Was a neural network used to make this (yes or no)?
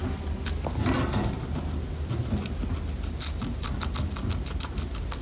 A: no